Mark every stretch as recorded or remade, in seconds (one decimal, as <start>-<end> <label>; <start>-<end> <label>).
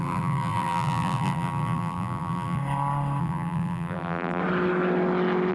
0.0-2.6 remade; 2.6-3.2 recorded; 3.2-4.4 remade; 4.4-5.5 recorded